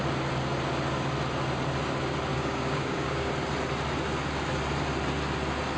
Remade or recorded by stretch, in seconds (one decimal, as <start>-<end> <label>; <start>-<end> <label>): 0.0-2.3 recorded; 2.3-3.3 remade; 3.3-5.8 recorded

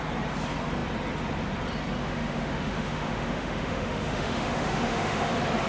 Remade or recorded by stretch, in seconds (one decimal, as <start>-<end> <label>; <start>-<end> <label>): 0.0-2.0 recorded; 2.0-5.3 remade; 5.3-5.7 recorded

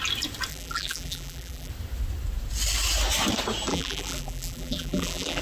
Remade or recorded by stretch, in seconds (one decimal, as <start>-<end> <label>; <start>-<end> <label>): 0.0-0.5 recorded; 0.5-1.7 remade; 1.7-3.7 recorded; 3.7-5.4 remade

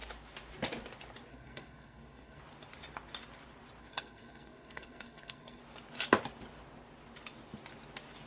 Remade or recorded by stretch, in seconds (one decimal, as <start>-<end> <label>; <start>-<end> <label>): 0.0-1.3 recorded; 1.3-2.4 remade; 2.4-3.8 recorded; 3.8-5.6 remade; 5.6-8.3 recorded